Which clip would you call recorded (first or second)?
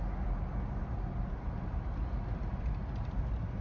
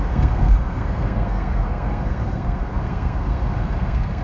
first